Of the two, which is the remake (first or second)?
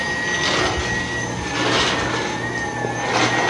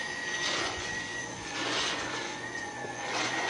second